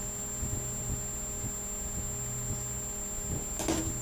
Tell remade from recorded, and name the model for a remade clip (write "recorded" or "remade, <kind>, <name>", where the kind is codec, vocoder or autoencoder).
recorded